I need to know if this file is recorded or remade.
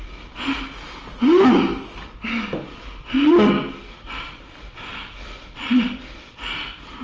recorded